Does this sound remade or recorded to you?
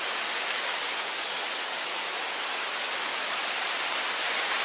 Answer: recorded